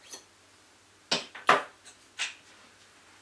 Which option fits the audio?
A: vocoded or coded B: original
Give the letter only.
B